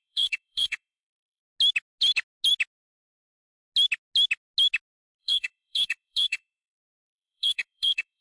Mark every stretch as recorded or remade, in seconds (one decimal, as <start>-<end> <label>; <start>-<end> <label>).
0.0-1.4 remade; 1.4-5.2 recorded; 5.2-8.2 remade